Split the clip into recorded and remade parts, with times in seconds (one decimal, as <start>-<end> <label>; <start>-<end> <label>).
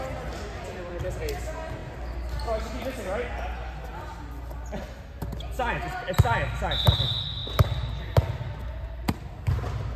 0.0-10.0 recorded